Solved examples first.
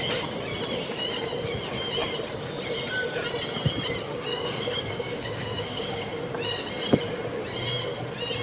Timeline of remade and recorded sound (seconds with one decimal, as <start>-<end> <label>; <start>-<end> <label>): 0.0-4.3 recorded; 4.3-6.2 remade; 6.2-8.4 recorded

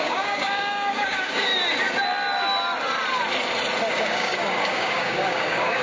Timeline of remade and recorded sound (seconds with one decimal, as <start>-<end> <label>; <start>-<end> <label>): 0.0-1.5 remade; 1.5-3.9 recorded; 3.9-5.8 remade

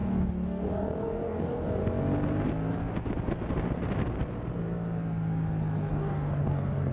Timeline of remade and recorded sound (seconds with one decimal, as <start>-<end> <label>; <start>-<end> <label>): 0.0-1.8 remade; 1.8-5.9 recorded; 5.9-6.9 remade